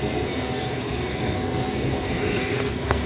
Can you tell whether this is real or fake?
fake